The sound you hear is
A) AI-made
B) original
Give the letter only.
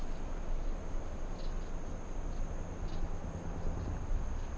B